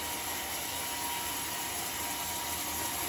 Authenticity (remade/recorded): recorded